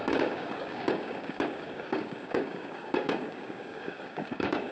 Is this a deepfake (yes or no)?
yes